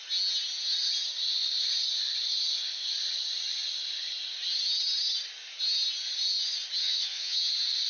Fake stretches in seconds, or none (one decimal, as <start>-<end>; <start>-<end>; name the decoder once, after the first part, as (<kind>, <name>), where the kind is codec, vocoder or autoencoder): 6.8-7.5 (vocoder, HiFi-GAN)

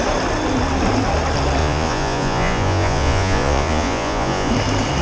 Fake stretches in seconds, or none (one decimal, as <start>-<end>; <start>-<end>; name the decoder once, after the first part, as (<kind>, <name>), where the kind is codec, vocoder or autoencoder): 1.6-4.5 (vocoder, Vocos)

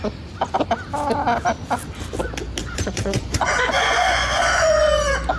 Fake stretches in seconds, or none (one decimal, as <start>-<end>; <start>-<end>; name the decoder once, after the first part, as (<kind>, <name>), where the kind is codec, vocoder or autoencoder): 2.6-4.9 (vocoder, Vocos)

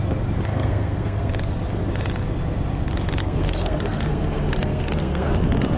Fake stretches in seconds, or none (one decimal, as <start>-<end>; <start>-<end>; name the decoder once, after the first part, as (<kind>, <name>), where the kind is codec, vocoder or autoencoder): 0.5-1.3 (codec, SNAC); 3.2-5.3

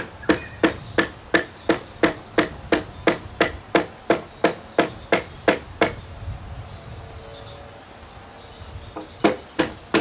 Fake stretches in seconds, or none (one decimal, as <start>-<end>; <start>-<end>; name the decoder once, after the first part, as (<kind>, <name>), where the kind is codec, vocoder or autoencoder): none

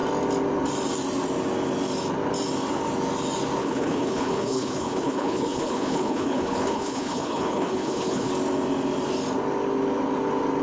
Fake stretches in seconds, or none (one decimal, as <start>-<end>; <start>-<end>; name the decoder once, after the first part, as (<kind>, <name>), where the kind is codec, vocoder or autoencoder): 3.6-8.3 (codec, HILCodec)

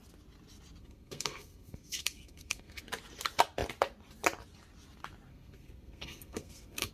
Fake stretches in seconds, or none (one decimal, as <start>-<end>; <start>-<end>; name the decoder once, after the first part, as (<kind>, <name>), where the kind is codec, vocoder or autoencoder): 0.8-2.8 (codec, SNAC); 5.3-6.9

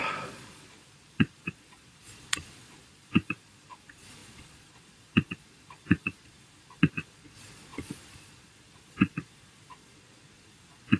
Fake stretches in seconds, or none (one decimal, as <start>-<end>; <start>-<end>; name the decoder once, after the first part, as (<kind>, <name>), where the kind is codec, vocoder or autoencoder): 0.0-11.0 (vocoder, Vocos)